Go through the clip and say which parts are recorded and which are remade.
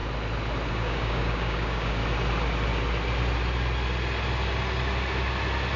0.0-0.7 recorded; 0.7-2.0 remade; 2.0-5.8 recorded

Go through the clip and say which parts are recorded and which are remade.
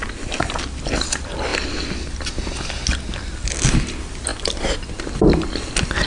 0.0-6.1 recorded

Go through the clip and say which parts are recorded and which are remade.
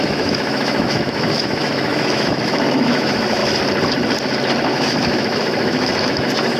0.0-3.4 remade; 3.4-4.7 recorded; 4.7-6.6 remade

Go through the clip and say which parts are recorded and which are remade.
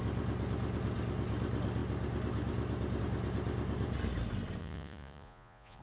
0.0-4.6 recorded; 4.6-5.8 remade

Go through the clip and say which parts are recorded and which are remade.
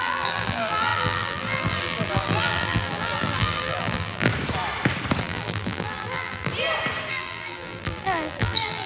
0.0-4.3 remade; 4.3-5.2 recorded; 5.2-6.5 remade; 6.5-7.1 recorded; 7.1-8.9 remade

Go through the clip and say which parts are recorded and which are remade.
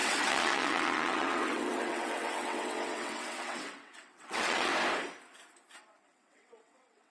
0.0-4.7 remade; 4.7-5.8 recorded; 5.8-7.1 remade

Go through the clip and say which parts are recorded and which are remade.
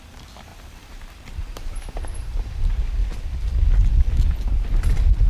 0.0-3.0 remade; 3.0-5.3 recorded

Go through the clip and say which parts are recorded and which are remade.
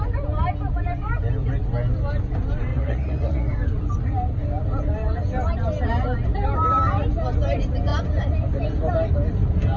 0.0-2.7 recorded; 2.7-3.5 remade; 3.5-9.8 recorded